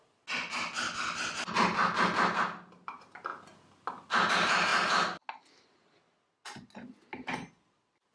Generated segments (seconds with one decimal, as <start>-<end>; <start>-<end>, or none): none